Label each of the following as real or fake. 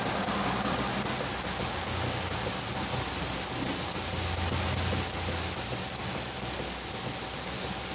real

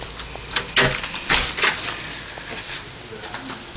real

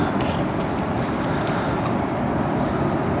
real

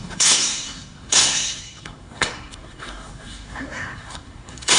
fake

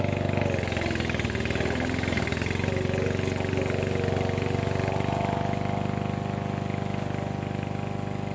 real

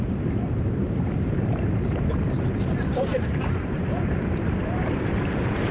fake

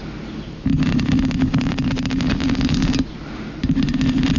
real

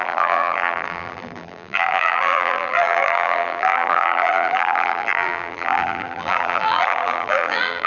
fake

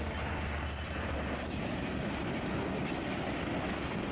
real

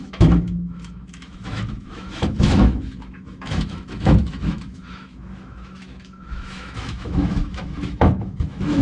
fake